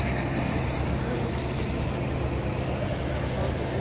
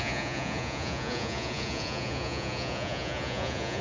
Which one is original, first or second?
first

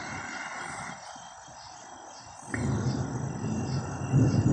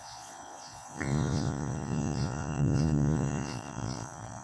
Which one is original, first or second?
first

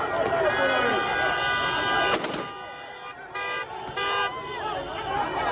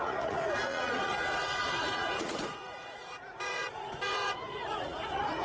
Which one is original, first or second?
first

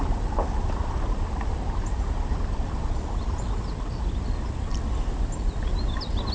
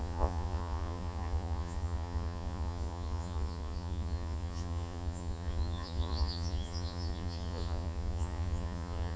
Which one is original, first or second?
first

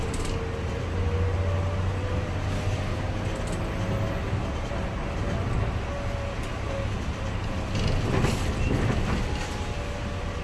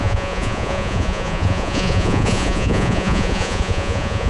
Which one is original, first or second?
first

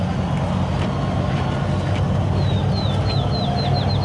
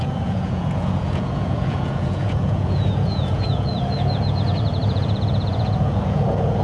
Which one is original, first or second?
first